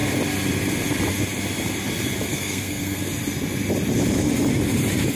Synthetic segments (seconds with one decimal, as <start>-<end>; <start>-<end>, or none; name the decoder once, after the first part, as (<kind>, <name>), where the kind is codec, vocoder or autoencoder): 2.3-3.0 (codec, SNAC)